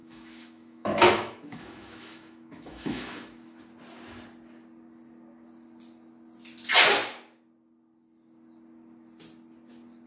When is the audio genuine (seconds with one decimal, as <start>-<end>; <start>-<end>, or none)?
3.6-10.1